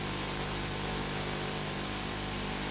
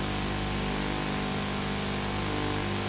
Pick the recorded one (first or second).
second